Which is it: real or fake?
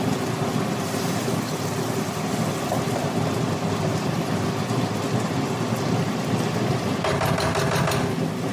real